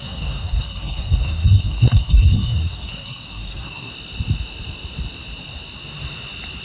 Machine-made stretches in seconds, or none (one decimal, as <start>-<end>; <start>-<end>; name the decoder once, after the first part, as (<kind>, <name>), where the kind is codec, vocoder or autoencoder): 0.0-3.9 (codec, SNAC)